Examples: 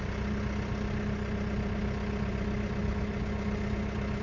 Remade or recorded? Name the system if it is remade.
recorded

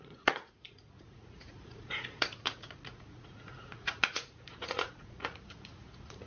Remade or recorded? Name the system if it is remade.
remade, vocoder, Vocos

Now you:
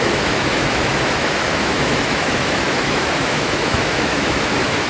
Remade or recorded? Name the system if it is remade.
remade, autoencoder, DAC-VAE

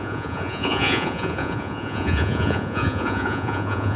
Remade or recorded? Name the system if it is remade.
remade, vocoder, Vocos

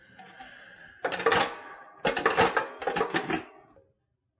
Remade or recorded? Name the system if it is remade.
recorded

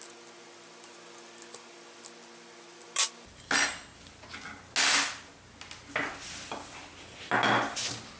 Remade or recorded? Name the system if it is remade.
recorded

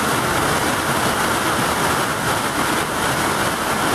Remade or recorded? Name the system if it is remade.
recorded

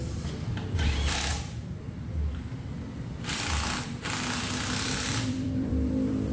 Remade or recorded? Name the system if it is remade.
remade, vocoder, BigVGAN v2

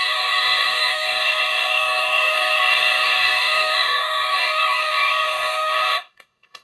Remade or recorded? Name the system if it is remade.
remade, codec, DAC